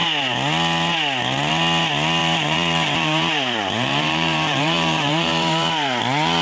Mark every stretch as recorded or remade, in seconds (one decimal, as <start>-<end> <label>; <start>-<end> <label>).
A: 0.0-2.2 recorded; 2.2-6.0 remade; 6.0-6.4 recorded